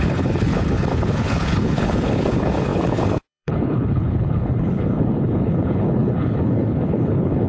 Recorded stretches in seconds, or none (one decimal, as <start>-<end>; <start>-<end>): none